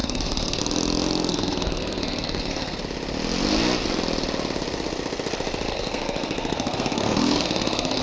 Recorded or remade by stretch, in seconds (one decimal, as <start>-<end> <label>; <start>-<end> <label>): 0.0-0.6 remade; 0.6-1.3 recorded; 1.3-2.8 remade; 2.8-5.7 recorded; 5.7-8.0 remade